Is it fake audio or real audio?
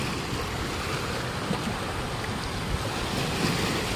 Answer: real